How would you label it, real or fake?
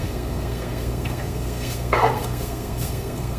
fake